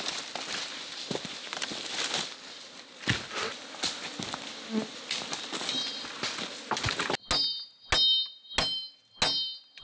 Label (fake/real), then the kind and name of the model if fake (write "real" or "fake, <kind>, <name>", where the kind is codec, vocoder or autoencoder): real